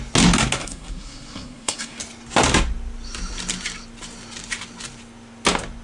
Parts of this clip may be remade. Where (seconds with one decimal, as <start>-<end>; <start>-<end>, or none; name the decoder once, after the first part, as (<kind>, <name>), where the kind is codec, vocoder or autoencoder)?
0.6-2.0 (codec, SNAC)